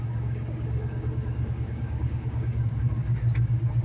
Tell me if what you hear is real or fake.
fake